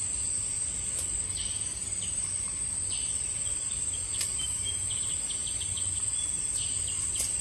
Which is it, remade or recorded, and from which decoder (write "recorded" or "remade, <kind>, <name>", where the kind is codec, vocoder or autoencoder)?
recorded